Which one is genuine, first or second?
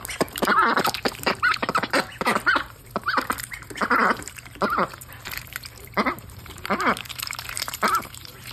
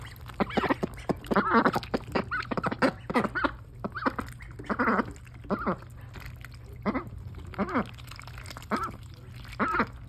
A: second